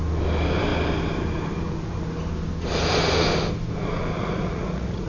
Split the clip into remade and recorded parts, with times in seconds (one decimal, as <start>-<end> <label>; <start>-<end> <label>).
0.0-4.2 recorded; 4.2-5.1 remade

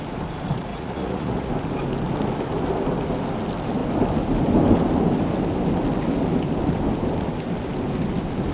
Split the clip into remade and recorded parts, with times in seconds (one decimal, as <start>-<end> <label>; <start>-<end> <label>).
0.0-0.7 recorded; 0.7-1.5 remade; 1.5-8.5 recorded

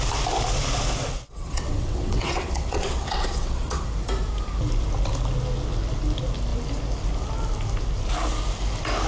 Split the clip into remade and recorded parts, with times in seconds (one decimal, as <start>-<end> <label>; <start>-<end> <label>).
0.0-1.0 recorded; 1.0-3.8 remade; 3.8-9.1 recorded